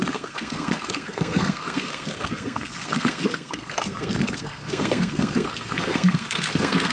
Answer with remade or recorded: remade